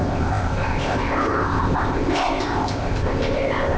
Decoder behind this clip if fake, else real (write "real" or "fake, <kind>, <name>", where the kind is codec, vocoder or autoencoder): fake, codec, ZipCodec